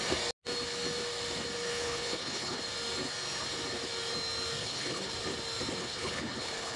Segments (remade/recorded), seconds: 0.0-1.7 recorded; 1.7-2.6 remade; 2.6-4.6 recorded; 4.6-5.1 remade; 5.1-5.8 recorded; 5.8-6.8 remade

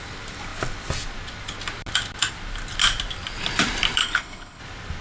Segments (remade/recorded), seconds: 0.0-4.0 recorded; 4.0-4.6 remade; 4.6-5.0 recorded

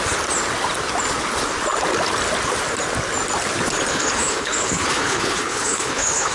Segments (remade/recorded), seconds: 0.0-3.9 recorded; 3.9-6.3 remade

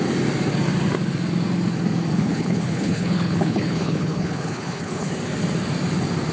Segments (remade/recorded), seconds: 0.0-2.1 recorded; 2.1-5.1 remade; 5.1-6.3 recorded

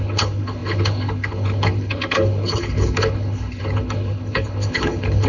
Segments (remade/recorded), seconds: 0.0-5.3 remade

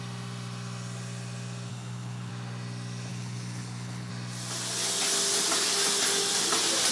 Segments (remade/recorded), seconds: 0.0-1.7 recorded; 1.7-2.3 remade; 2.3-3.1 recorded; 3.1-4.1 remade; 4.1-6.9 recorded

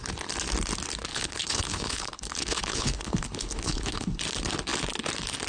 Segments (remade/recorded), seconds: 0.0-1.1 recorded; 1.1-4.2 remade; 4.2-5.5 recorded

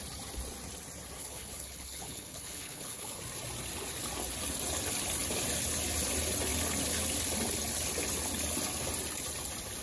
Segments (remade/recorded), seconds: 0.0-1.2 recorded; 1.2-3.2 remade; 3.2-9.8 recorded